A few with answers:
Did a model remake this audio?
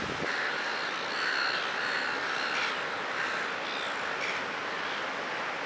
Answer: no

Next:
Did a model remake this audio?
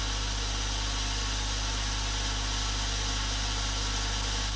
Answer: no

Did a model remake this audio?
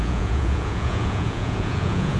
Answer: yes